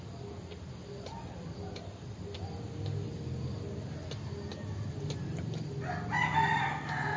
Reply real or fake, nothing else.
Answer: real